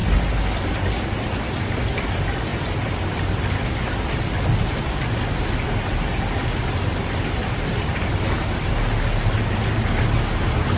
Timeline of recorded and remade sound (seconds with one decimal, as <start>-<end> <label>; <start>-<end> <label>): 0.0-10.8 recorded